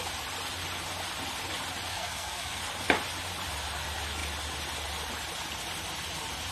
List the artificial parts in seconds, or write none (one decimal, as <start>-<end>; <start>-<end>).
1.9-2.6